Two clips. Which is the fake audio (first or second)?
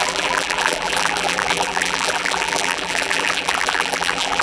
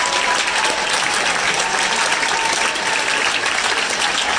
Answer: first